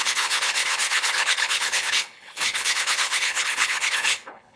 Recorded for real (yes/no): no